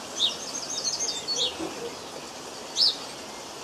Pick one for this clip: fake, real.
real